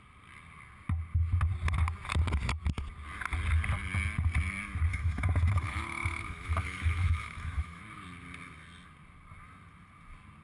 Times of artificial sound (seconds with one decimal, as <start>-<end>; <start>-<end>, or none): 4.9-7.8

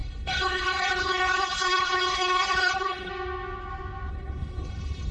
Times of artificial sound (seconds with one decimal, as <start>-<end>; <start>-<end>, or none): 0.0-3.1; 4.1-5.1

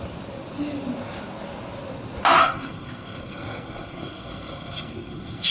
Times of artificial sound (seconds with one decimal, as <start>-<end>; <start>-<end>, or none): 2.4-5.5

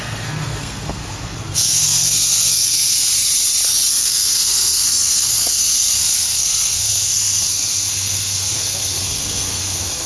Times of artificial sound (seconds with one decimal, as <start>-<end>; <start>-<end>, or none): 0.0-3.1; 3.9-10.1

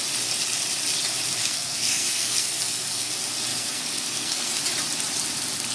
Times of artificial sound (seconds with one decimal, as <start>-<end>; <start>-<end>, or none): 1.4-3.1; 3.5-4.5

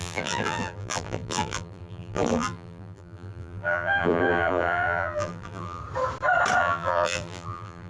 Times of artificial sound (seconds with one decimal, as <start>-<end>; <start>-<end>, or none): 0.0-5.8; 6.6-7.9

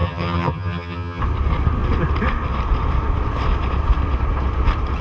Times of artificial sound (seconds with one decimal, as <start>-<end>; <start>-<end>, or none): 0.0-1.2